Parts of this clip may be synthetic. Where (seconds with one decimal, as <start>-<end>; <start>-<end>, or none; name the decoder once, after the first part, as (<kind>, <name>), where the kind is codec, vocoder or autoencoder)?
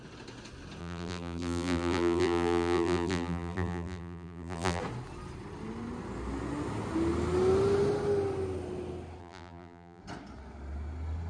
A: 0.8-4.8 (vocoder, BigVGAN v2); 9.2-10.0